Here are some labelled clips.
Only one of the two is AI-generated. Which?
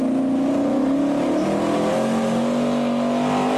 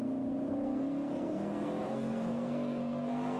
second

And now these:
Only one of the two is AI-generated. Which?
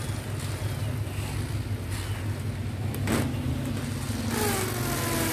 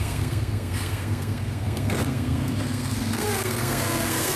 second